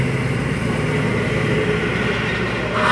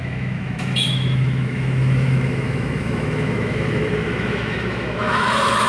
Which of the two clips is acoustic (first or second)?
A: first